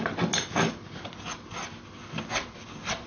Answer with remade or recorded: recorded